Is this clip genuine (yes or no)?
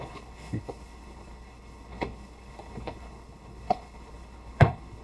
no